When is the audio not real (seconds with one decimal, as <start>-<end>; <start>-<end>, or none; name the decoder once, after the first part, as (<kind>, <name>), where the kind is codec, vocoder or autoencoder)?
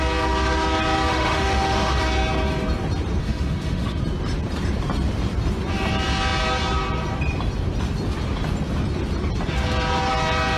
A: 1.1-2.0 (autoencoder, DAC-VAE); 3.2-4.0